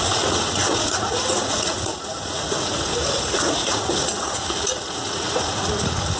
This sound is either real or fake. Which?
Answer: fake